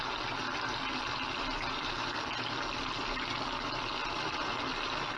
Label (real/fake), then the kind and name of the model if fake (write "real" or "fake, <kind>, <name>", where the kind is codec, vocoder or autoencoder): real